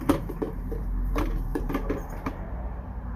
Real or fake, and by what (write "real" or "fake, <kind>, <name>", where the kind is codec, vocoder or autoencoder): fake, vocoder, BigVGAN v2